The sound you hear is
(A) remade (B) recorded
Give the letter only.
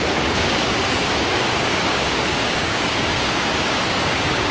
A